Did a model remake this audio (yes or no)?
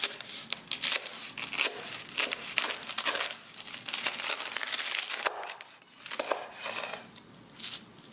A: no